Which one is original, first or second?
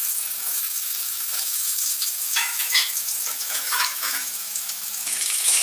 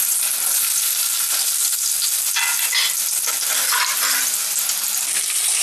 second